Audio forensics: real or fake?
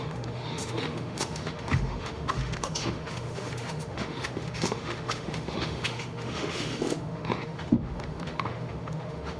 fake